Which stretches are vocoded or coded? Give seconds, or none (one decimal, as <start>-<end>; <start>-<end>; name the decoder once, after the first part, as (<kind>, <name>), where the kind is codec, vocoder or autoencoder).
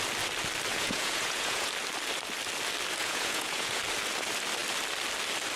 0.7-1.7 (vocoder, Vocos); 3.0-3.8